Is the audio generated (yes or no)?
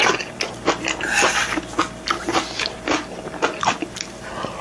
no